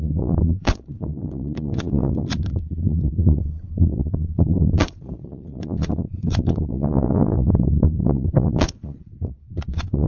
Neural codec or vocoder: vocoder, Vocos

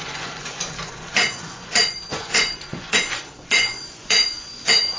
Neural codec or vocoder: vocoder, Vocos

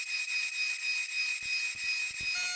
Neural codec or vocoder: none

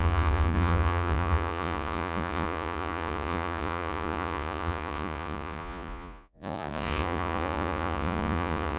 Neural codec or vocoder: vocoder, Vocos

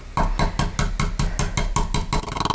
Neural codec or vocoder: none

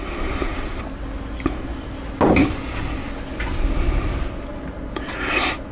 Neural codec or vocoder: none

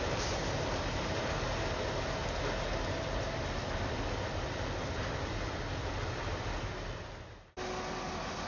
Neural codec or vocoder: none